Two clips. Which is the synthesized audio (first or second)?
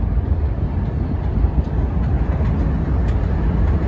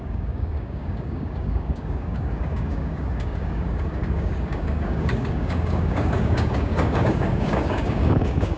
second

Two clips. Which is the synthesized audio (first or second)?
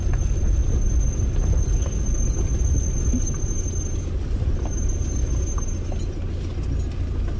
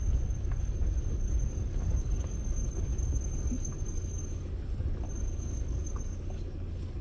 second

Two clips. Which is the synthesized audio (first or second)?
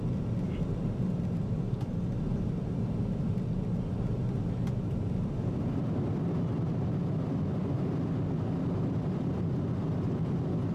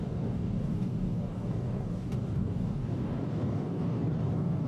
second